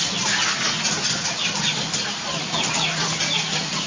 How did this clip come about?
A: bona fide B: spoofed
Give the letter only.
A